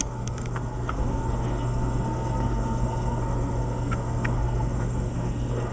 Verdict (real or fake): fake